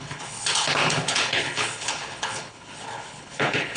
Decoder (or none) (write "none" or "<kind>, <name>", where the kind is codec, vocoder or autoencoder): codec, HILCodec